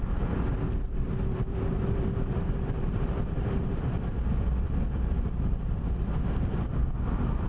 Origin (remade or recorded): remade